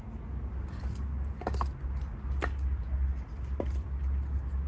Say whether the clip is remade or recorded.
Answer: recorded